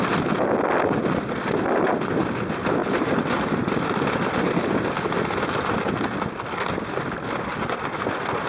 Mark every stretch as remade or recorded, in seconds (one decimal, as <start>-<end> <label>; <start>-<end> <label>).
0.0-8.5 recorded